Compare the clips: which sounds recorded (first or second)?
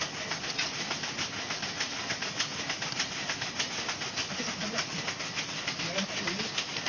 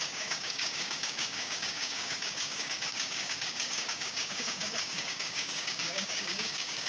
first